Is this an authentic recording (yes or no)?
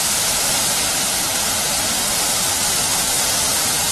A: yes